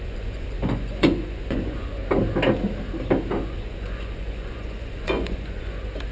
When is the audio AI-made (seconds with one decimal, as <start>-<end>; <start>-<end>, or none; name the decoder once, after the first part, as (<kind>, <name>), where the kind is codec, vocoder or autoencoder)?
0.0-2.0 (vocoder, Vocos); 3.4-6.1